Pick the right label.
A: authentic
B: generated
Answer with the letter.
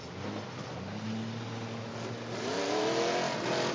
A